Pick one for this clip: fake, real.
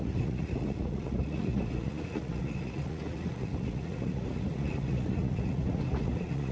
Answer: fake